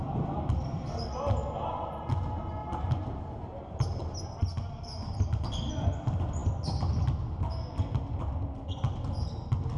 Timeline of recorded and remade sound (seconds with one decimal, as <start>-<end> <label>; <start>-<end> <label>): 0.0-2.6 recorded; 2.6-4.4 remade; 4.4-9.8 recorded